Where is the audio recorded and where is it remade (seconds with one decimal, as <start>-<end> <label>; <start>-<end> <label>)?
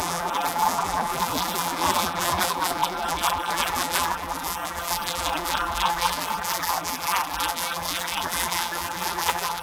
0.0-9.6 remade